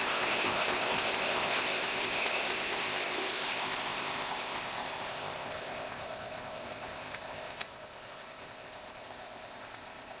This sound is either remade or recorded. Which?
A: remade